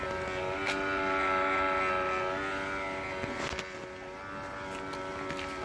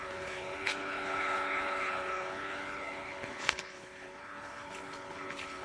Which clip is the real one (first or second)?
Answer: first